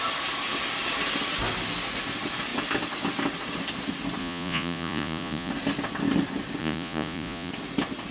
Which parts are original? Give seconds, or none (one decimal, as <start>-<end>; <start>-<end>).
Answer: 0.0-4.2; 5.5-6.6; 7.5-8.1